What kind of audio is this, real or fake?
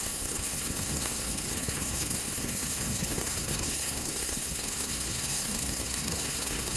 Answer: fake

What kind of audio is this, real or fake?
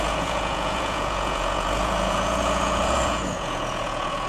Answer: fake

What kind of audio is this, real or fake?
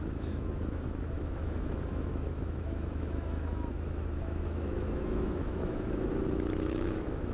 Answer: fake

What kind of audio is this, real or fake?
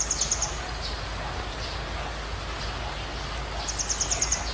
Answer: real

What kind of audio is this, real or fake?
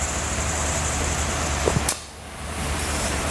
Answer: fake